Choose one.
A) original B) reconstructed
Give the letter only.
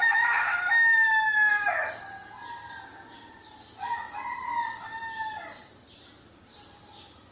A